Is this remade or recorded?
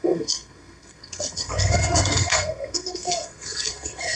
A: remade